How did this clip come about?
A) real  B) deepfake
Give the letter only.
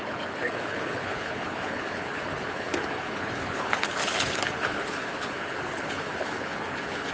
B